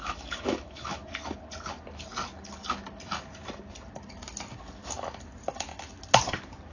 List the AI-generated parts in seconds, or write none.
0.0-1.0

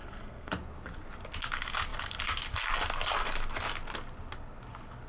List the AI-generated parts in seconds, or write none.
0.0-0.5

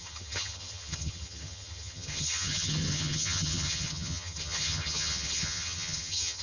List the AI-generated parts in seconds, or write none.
0.0-6.4

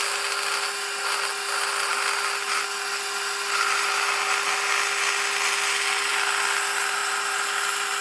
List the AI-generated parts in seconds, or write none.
none